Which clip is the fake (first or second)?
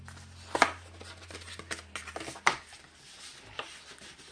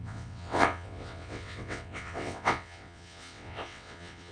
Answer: second